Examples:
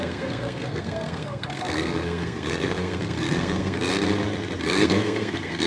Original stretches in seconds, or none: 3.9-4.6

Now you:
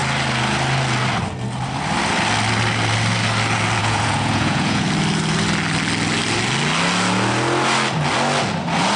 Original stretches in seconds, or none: 0.0-3.8; 4.9-9.0

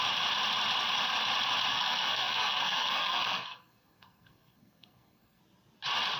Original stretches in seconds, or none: 0.0-1.7; 5.4-6.2

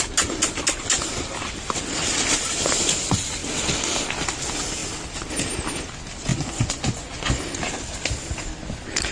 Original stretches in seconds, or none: 0.0-6.3; 7.1-9.1